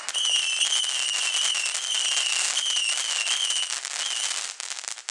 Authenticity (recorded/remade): recorded